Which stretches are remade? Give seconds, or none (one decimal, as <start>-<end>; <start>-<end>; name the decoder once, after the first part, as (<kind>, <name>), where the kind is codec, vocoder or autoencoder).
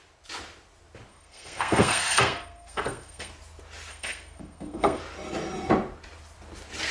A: 1.1-3.3 (codec, SNAC); 3.9-5.0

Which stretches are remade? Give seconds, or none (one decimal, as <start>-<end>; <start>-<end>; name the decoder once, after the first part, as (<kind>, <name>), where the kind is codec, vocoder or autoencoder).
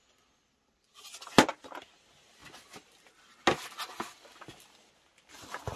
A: none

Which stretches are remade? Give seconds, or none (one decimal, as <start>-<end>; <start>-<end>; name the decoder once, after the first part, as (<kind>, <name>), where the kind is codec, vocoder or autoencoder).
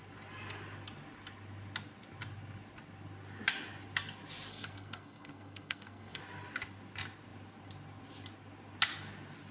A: 4.5-6.2 (codec, SNAC)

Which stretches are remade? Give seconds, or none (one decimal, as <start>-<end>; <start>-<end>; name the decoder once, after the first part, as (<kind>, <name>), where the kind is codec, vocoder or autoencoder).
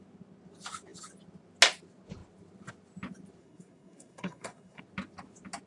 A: 3.4-4.8 (codec, SNAC)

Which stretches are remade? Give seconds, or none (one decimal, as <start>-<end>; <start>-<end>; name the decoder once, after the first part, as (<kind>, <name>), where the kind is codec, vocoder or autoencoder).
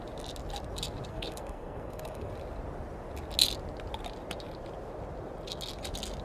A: 1.1-2.3 (codec, SNAC)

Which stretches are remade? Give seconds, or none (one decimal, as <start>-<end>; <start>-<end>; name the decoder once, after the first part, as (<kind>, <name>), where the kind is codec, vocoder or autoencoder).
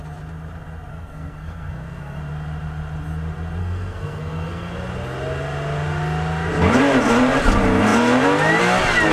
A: 0.9-2.2 (codec, SNAC); 3.6-4.7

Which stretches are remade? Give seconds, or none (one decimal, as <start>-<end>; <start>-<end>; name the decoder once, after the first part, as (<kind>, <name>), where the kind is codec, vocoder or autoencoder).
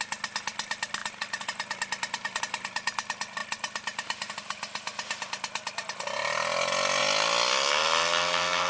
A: none